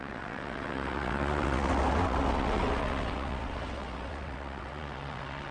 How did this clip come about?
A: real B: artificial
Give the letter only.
B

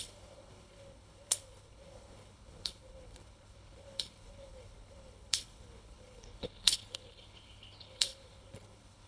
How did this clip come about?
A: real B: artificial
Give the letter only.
B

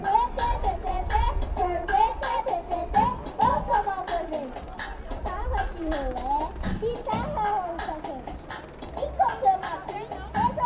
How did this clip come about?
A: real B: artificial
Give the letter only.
A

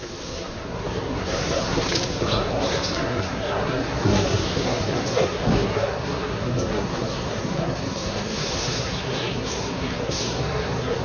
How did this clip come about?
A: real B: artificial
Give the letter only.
B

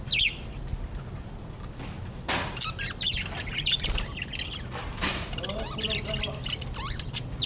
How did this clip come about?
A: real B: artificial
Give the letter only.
A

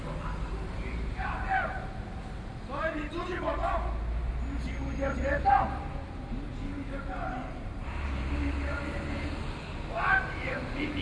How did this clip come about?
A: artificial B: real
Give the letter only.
B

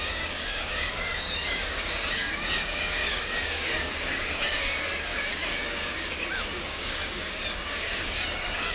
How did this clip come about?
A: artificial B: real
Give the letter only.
A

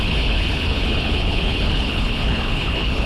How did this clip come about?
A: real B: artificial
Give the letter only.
B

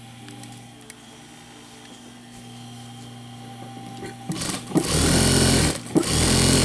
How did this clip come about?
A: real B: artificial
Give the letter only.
A